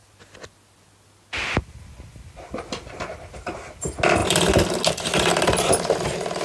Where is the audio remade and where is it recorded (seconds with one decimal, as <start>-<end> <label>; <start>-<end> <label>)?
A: 0.0-6.4 recorded